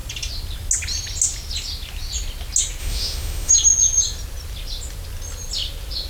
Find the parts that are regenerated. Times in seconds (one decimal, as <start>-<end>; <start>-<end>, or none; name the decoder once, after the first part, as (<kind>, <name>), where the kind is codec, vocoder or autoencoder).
2.8-3.5 (autoencoder, DAC-VAE)